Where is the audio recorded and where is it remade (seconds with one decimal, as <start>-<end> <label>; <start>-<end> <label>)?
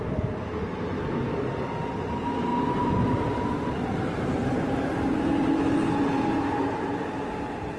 0.0-2.5 recorded; 2.5-3.4 remade; 3.4-4.4 recorded; 4.4-7.8 remade